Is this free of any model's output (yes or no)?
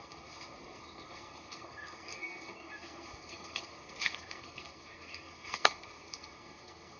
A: no